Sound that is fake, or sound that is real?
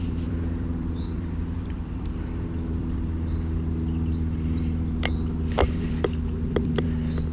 fake